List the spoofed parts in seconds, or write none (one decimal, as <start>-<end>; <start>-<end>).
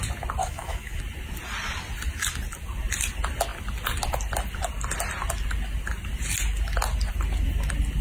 0.4-1.0